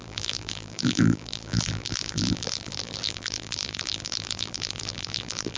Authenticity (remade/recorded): remade